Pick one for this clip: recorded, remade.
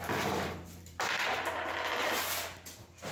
remade